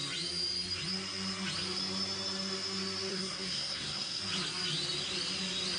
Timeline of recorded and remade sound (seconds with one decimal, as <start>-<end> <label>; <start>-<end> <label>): 0.0-3.1 recorded; 3.1-4.2 remade; 4.2-5.8 recorded